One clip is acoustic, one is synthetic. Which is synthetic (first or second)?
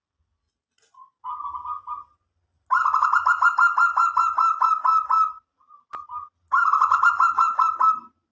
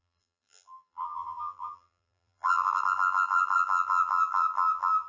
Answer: second